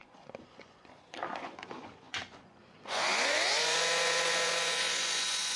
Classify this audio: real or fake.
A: fake